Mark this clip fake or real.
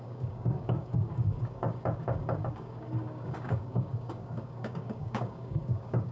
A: fake